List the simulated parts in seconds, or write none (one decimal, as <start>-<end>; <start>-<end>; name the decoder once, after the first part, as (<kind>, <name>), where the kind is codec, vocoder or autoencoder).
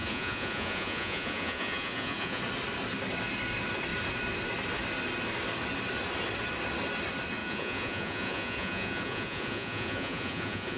0.0-2.4 (vocoder, Vocos); 7.4-10.8